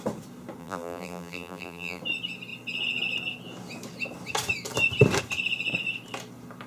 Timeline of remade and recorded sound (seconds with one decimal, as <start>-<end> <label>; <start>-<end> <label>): 0.0-0.6 recorded; 0.6-2.0 remade; 2.0-6.7 recorded